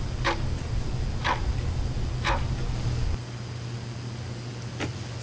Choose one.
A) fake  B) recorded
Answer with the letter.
B